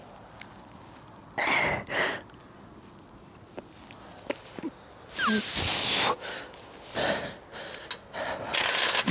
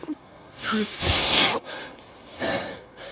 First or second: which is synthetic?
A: second